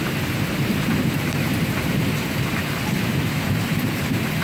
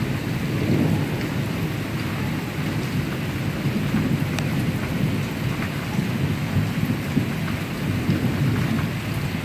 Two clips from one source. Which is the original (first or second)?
second